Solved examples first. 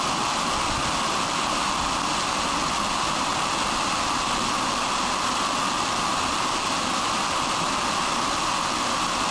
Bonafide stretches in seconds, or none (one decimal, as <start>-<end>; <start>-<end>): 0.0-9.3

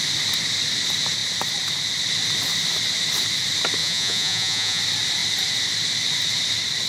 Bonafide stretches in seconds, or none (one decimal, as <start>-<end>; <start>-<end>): 0.0-3.8; 4.8-6.9

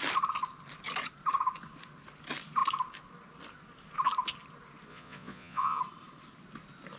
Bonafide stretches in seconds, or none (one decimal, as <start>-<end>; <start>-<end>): 0.0-4.9; 5.8-7.0

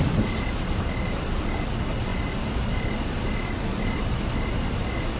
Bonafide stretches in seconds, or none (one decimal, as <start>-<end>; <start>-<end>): 0.0-5.2

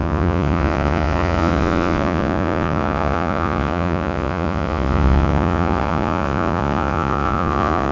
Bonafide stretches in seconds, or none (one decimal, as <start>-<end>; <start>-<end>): none

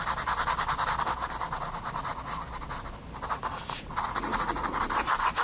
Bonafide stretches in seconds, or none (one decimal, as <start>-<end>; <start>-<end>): 0.0-3.3; 4.8-5.4

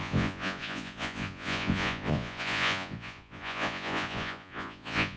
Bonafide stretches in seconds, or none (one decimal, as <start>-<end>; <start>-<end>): none